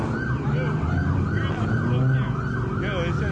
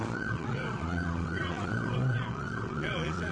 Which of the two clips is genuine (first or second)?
first